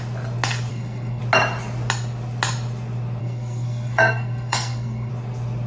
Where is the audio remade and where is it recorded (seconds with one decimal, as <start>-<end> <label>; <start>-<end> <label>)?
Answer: 0.0-0.7 recorded; 0.7-1.2 remade; 1.2-3.2 recorded; 3.2-5.1 remade; 5.1-5.7 recorded